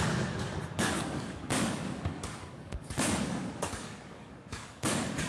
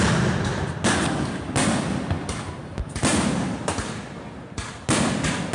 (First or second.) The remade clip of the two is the first